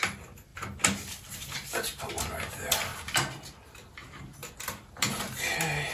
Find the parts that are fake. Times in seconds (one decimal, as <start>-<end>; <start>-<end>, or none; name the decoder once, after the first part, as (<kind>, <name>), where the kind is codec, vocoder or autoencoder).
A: none